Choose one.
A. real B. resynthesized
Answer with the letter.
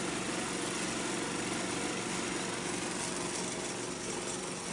A